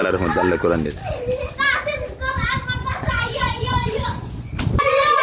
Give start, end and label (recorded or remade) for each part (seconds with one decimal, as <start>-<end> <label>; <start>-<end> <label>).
0.0-3.1 recorded; 3.1-4.5 remade; 4.5-5.2 recorded